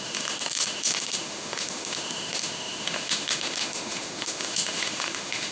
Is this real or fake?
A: fake